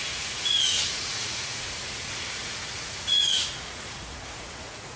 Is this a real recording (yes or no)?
no